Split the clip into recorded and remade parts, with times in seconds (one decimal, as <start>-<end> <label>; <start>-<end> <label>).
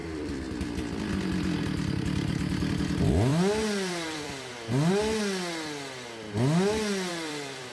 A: 0.0-1.1 remade; 1.1-3.3 recorded; 3.3-4.9 remade; 4.9-7.1 recorded; 7.1-7.7 remade